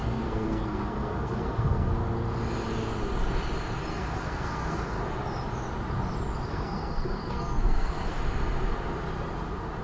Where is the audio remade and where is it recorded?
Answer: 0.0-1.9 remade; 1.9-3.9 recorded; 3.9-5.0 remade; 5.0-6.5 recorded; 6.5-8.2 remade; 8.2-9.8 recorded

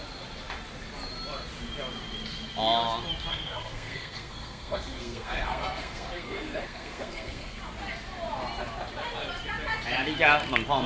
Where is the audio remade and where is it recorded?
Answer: 0.0-3.3 recorded; 3.3-7.6 remade; 7.6-10.9 recorded

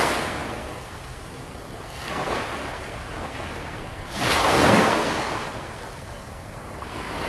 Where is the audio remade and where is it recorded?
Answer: 0.0-7.3 remade

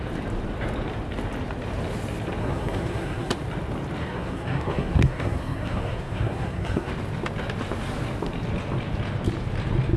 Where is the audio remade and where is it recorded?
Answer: 0.0-2.4 recorded; 2.4-3.3 remade; 3.3-4.0 recorded; 4.0-6.9 remade; 6.9-10.0 recorded